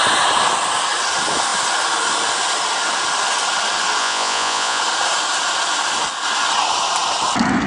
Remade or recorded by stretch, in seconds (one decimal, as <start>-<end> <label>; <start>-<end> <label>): 0.0-4.0 recorded; 4.0-4.8 remade; 4.8-7.7 recorded